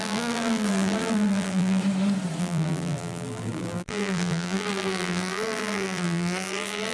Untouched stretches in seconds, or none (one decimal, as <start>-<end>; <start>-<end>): 1.8-2.4

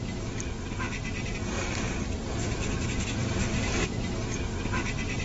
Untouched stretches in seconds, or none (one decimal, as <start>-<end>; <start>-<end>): 0.0-1.4; 4.3-5.2

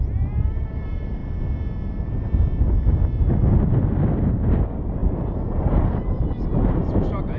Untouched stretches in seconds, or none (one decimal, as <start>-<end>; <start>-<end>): 1.2-4.3

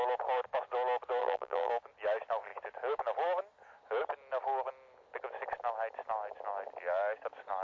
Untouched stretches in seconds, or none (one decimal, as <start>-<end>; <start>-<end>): 0.0-1.2; 1.7-7.6

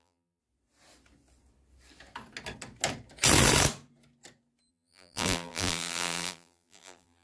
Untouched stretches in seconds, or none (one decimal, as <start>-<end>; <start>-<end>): 0.4-4.7

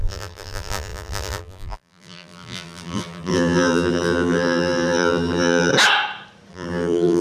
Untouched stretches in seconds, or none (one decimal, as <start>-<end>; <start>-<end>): 5.7-6.5

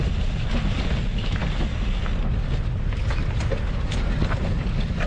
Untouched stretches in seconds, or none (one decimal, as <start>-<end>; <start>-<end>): 0.0-5.1

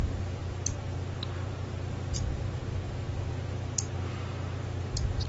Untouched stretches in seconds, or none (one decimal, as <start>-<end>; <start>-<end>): 0.0-0.4; 3.3-5.3